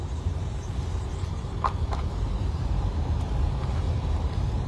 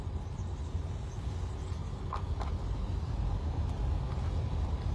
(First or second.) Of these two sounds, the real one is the second